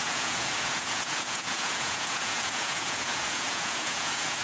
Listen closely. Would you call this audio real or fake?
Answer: fake